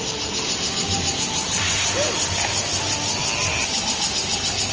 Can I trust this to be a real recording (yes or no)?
yes